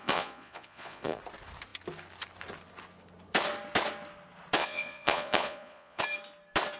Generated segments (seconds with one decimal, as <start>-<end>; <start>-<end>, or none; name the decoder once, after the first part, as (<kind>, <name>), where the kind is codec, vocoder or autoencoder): 0.0-1.2 (vocoder, Vocos); 4.6-6.0